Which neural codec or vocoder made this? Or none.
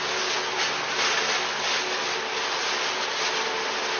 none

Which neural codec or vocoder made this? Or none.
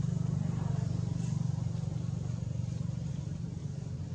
none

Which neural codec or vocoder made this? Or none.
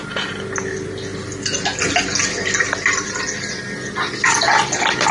none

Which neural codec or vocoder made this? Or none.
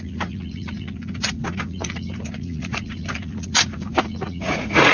vocoder, Vocos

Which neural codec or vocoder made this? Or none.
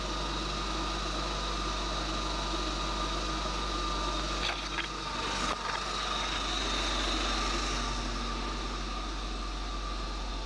none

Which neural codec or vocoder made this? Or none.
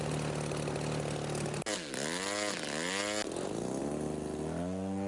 none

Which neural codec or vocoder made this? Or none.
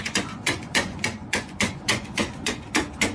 vocoder, Vocos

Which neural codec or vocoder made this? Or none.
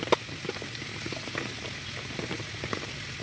none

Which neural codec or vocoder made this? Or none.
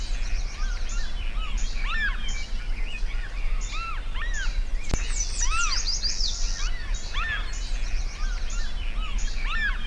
none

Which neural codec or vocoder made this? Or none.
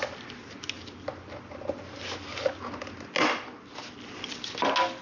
none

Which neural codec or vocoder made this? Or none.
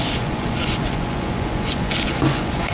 vocoder, Vocos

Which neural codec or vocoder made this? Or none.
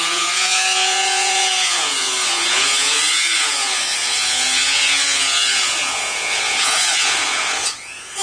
vocoder, Vocos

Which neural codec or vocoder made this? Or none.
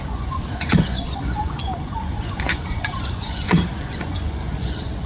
vocoder, Vocos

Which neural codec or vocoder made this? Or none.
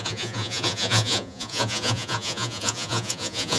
vocoder, Vocos